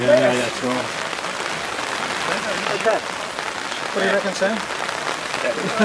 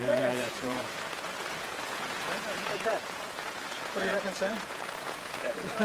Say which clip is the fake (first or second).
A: second